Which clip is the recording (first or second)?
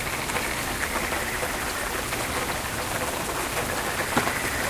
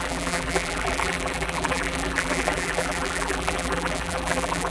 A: first